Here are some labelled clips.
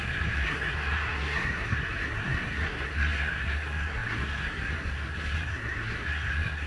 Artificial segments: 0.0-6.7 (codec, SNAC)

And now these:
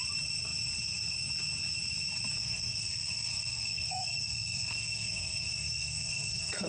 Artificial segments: 2.4-6.7 (codec, SNAC)

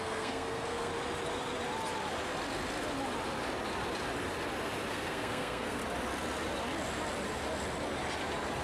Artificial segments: 0.0-0.9 (codec, SNAC); 4.9-5.8

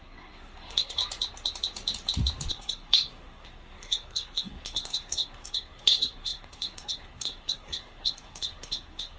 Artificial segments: 0.0-1.0 (codec, SNAC); 2.5-9.2

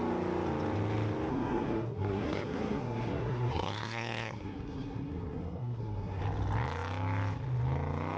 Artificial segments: 1.3-6.2 (codec, SNAC)

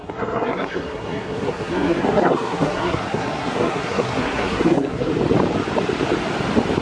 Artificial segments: 0.0-5.1 (codec, SNAC)

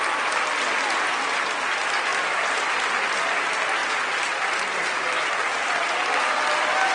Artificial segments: none